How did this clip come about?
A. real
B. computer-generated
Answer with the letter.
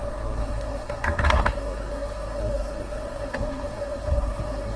B